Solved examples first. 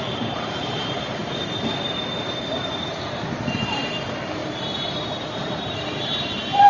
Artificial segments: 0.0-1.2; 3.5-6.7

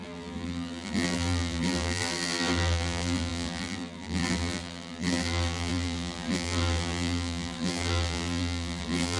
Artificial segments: 0.0-9.2

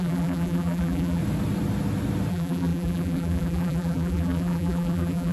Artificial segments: 0.0-1.2; 2.3-5.3

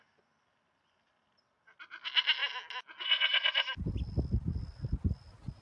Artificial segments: none

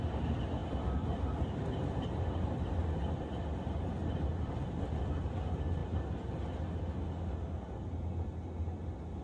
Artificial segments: none

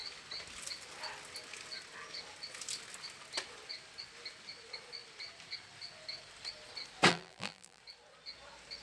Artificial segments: 7.1-7.8

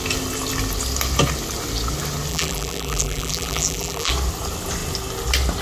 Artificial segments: 2.3-4.1

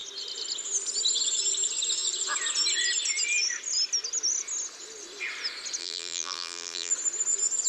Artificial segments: 5.8-6.9